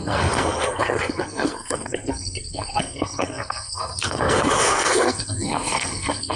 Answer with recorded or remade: remade